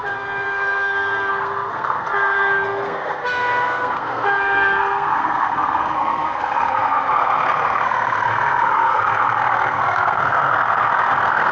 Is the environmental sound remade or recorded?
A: remade